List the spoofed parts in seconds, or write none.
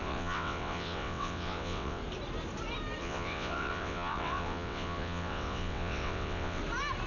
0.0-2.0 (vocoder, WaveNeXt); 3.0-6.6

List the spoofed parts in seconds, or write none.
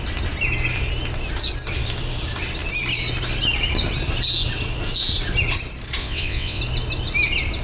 6.0-6.6 (vocoder, WaveNeXt)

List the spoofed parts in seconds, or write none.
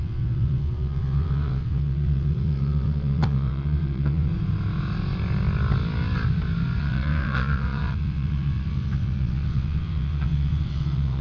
0.0-4.3 (vocoder, WaveNeXt); 6.8-11.2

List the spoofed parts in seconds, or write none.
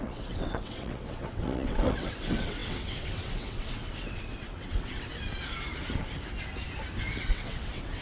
0.0-5.1 (vocoder, WaveNeXt); 7.2-8.0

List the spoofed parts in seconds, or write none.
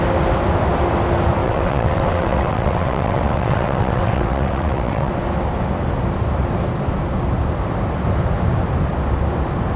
1.4-5.1 (vocoder, WaveNeXt)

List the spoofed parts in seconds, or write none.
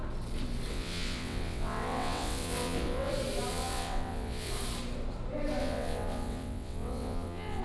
0.7-3.1 (vocoder, WaveNeXt); 3.5-4.5; 5.6-7.6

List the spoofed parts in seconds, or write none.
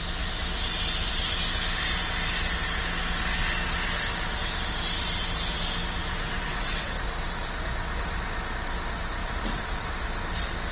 6.2-7.0 (vocoder, WaveNeXt); 9.2-9.9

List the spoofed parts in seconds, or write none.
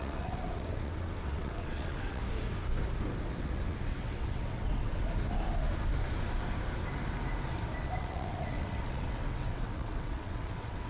0.0-2.2 (vocoder, WaveNeXt); 3.4-5.0; 8.0-10.9